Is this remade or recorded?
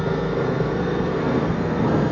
remade